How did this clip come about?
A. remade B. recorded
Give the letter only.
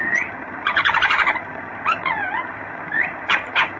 A